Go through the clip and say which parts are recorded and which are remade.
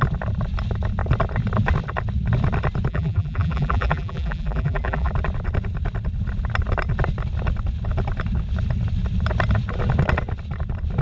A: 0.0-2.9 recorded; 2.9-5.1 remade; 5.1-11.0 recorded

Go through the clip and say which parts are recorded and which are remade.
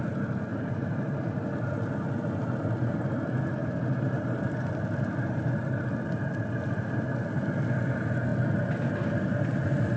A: 0.0-0.5 recorded; 0.5-1.3 remade; 1.3-3.6 recorded; 3.6-4.5 remade; 4.5-10.0 recorded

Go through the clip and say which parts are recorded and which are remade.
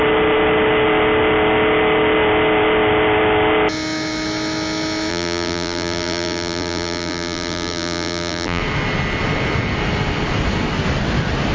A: 0.0-5.1 recorded; 5.1-8.6 remade; 8.6-11.5 recorded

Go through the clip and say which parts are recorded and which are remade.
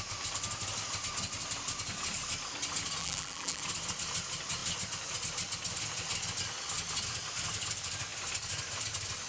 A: 0.0-3.0 recorded; 3.0-3.6 remade; 3.6-9.3 recorded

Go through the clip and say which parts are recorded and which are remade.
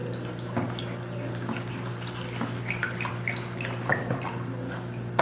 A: 0.0-3.9 recorded; 3.9-5.2 remade